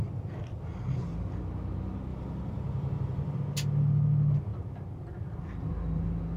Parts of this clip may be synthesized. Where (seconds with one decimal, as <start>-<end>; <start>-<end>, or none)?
2.1-3.4